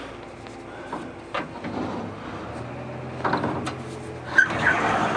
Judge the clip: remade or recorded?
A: recorded